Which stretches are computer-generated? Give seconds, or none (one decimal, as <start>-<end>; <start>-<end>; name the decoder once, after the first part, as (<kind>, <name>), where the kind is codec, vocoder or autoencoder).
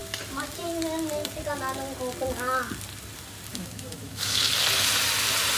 3.5-4.5 (autoencoder, DAC-VAE)